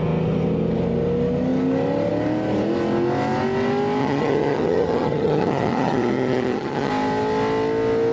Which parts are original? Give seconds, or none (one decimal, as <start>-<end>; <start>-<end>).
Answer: 0.0-4.0; 6.9-8.1